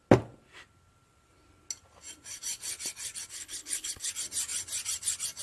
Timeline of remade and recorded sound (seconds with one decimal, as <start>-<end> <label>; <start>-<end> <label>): 0.0-3.3 recorded; 3.3-4.1 remade; 4.1-5.4 recorded